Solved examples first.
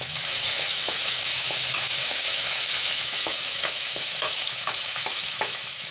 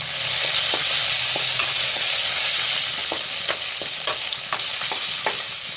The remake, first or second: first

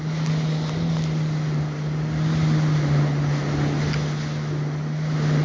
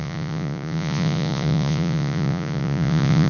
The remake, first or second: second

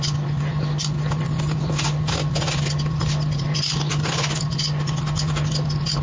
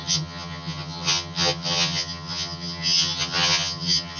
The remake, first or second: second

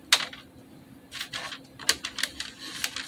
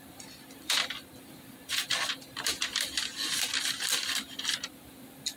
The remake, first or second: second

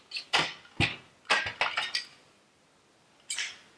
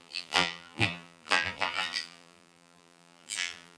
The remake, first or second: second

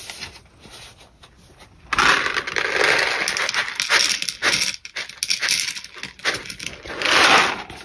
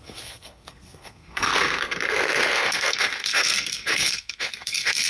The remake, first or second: second